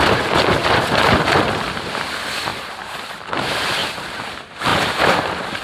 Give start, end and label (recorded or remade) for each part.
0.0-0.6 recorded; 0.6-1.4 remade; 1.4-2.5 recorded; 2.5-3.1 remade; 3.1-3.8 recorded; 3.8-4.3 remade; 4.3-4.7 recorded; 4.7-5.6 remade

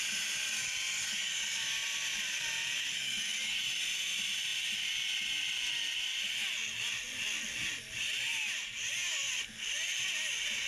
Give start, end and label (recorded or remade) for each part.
0.0-1.8 recorded; 1.8-2.4 remade; 2.4-10.7 recorded

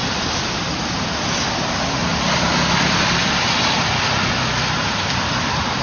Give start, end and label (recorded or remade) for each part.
0.0-0.6 remade; 0.6-2.1 recorded; 2.1-5.8 remade

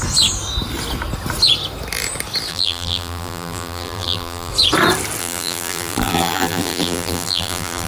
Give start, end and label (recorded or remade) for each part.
0.0-2.5 recorded; 2.5-4.5 remade; 4.5-5.2 recorded; 5.2-7.9 remade